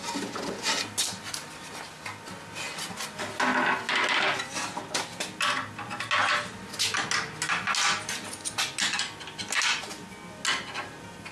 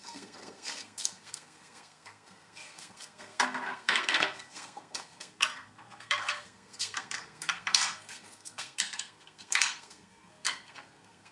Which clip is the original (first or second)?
first